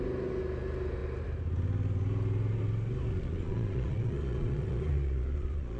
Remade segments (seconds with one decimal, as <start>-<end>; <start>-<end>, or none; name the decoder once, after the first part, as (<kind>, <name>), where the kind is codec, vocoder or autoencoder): 3.1-5.8 (vocoder, Vocos)